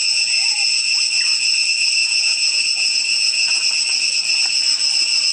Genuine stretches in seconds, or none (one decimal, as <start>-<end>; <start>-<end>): 1.0-2.0; 3.6-5.3